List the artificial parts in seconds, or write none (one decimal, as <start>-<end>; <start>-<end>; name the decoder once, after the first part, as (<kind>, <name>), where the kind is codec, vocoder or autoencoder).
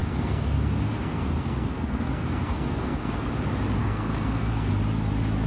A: 0.0-3.3 (codec, SNAC); 3.8-4.7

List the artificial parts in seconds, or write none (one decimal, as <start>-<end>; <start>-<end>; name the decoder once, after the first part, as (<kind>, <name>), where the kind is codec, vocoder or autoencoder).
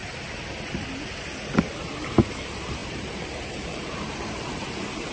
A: 2.3-5.1 (vocoder, BigVGAN v2)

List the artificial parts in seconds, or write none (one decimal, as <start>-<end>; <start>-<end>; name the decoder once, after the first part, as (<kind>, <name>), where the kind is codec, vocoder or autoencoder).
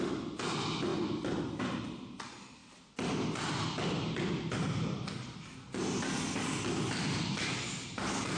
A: none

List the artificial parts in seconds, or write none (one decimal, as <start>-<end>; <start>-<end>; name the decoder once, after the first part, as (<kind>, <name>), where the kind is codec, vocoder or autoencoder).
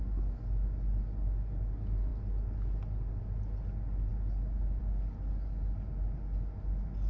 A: none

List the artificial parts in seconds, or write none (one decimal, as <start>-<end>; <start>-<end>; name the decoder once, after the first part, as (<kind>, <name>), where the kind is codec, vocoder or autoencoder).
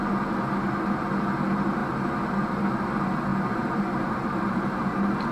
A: 3.3-4.8 (vocoder, BigVGAN v2)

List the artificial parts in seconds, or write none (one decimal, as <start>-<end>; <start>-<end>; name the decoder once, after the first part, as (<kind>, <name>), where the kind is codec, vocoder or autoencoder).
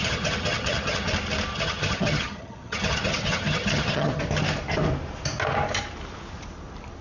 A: 0.0-1.1 (vocoder, HiFi-GAN); 1.5-4.2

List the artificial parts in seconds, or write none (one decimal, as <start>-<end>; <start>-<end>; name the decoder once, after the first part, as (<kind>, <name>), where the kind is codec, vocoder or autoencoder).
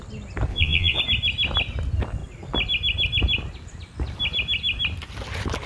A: 0.5-1.0 (vocoder, Vocos)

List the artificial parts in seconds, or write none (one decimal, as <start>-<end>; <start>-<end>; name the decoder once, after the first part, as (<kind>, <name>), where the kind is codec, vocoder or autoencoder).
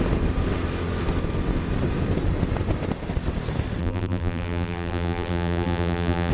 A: 3.8-6.3 (vocoder, BigVGAN v2)